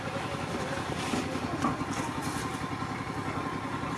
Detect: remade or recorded recorded